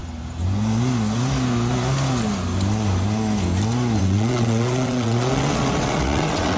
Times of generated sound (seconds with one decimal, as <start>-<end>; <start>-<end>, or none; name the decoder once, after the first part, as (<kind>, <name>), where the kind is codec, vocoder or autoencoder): 4.0-6.6 (vocoder, WaveNeXt)